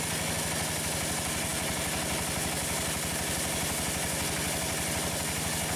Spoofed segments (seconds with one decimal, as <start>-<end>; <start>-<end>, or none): none